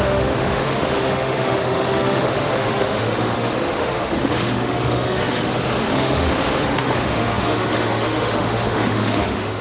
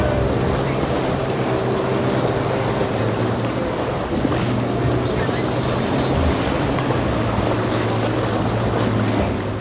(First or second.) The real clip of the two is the second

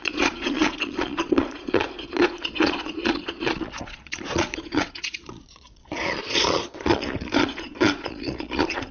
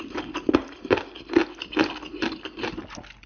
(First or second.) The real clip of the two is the second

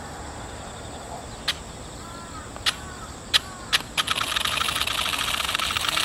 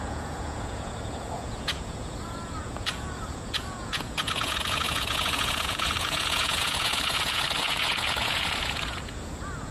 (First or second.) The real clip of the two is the first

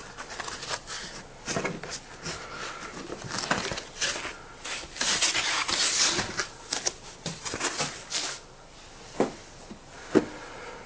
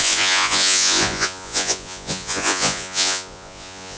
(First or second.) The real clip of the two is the first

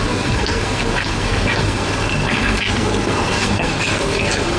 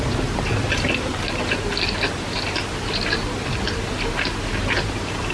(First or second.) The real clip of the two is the second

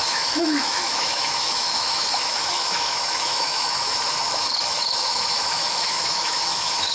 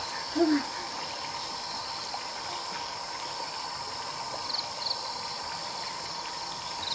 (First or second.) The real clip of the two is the second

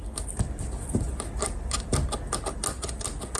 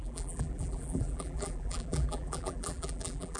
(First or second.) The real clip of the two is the first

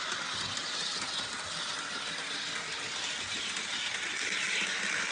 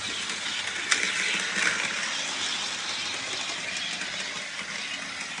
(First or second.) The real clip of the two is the second